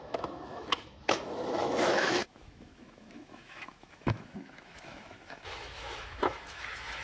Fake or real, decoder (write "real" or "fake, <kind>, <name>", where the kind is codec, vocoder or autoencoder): fake, autoencoder, DAC-VAE